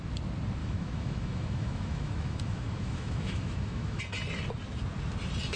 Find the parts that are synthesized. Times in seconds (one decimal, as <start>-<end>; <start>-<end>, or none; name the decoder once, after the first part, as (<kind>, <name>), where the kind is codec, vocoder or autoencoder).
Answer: 0.6-4.0 (autoencoder, DAC-VAE)